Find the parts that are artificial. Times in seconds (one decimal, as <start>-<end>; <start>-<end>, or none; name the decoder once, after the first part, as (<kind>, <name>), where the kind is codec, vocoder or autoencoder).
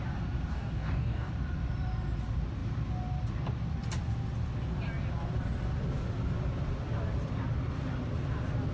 0.5-1.3 (codec, DAC)